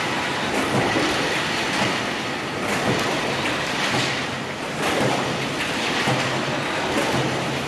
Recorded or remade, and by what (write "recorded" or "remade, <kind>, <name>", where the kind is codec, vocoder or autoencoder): recorded